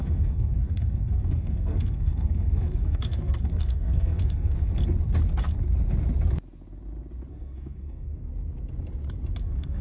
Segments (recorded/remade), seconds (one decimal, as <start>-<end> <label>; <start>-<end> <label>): 0.0-4.7 remade; 4.7-7.3 recorded; 7.3-8.3 remade; 8.3-9.4 recorded; 9.4-9.8 remade